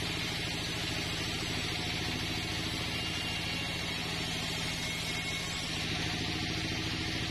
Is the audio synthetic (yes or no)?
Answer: no